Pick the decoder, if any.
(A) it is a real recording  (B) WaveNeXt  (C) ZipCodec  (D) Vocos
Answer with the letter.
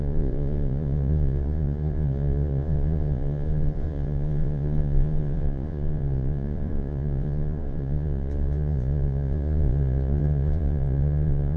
D